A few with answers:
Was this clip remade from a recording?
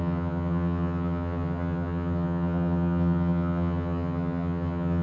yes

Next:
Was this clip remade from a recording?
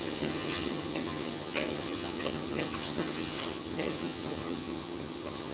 yes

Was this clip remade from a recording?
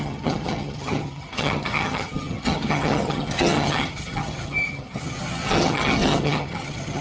yes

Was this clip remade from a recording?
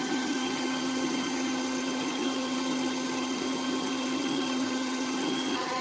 yes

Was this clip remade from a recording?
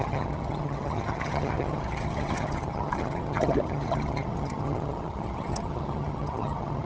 yes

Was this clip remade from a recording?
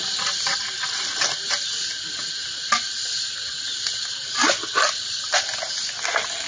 no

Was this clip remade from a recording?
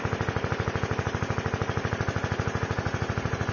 no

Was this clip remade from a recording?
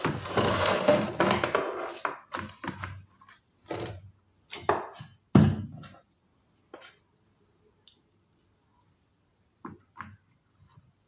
no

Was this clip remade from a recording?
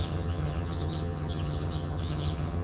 yes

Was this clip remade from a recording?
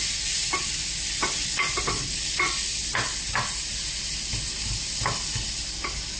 no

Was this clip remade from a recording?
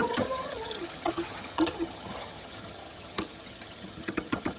yes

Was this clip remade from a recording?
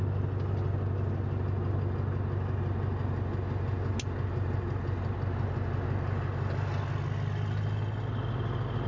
no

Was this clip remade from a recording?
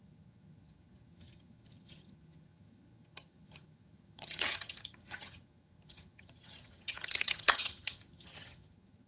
yes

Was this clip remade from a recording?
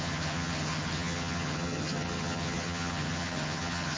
yes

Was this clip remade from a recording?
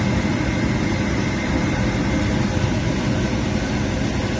no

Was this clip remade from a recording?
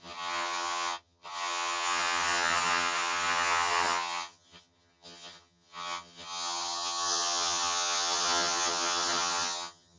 yes